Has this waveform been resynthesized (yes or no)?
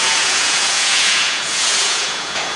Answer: yes